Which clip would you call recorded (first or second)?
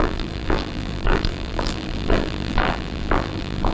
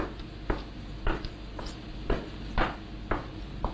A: second